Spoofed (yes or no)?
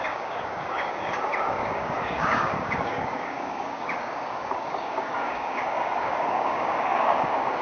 yes